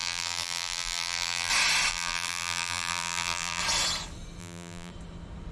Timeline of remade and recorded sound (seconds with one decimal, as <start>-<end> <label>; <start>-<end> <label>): 0.0-1.5 remade; 1.5-1.9 recorded; 1.9-3.6 remade; 3.6-4.4 recorded; 4.4-4.9 remade; 4.9-5.5 recorded